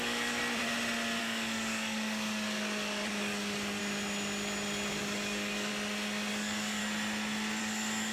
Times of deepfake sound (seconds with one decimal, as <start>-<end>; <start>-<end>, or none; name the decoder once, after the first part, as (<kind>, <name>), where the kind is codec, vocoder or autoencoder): 0.0-0.4 (codec, DAC); 1.2-3.8; 5.0-5.7; 6.3-6.8; 7.6-8.1

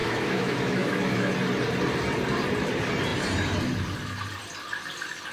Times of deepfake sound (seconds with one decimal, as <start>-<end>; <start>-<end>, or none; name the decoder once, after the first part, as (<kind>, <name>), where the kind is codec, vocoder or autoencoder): 0.0-1.3 (autoencoder, DAC-VAE)

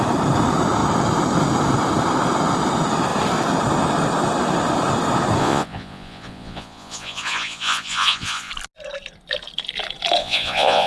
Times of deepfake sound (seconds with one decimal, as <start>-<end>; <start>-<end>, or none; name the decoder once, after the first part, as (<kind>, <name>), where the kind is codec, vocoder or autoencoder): 5.4-8.5 (vocoder, Vocos); 10.2-10.9

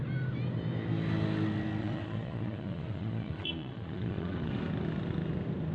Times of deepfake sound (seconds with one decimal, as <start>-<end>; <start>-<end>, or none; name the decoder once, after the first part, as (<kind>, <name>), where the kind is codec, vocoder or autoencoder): 1.8-4.5 (vocoder, Vocos)

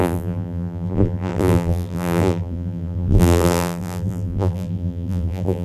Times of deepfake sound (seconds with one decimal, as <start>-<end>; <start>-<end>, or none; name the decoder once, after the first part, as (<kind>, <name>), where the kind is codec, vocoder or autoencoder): 0.0-5.6 (vocoder, BigVGAN v2)